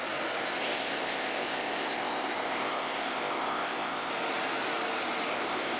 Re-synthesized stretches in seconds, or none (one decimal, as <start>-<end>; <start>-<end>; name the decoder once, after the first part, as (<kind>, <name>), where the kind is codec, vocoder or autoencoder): 0.6-4.1 (codec, ZipCodec); 5.3-5.8